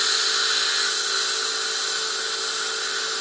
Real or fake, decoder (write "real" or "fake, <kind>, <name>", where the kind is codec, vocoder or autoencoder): real